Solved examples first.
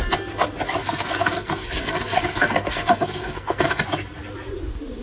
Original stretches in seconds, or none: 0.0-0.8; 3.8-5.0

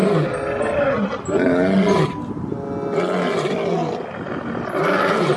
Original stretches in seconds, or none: 0.0-5.4

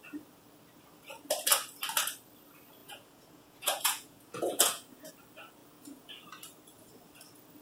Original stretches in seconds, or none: 0.0-2.8; 5.1-5.6; 6.2-7.6

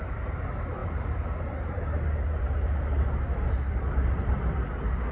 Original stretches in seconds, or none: 0.0-5.1

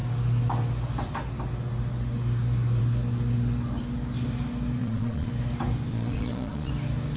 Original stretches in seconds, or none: 0.0-4.8; 5.3-5.9; 6.7-7.2

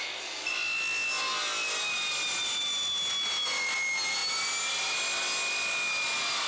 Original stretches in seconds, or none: 0.0-6.5

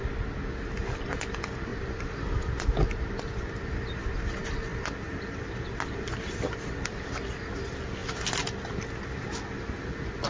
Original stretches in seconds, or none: 0.0-1.7; 3.0-4.7; 7.4-10.3